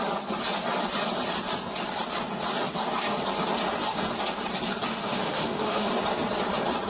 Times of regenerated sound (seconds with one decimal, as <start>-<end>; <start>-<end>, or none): 4.9-5.9